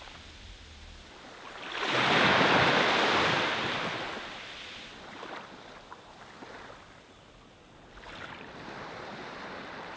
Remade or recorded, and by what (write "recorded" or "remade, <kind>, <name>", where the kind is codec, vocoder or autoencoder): recorded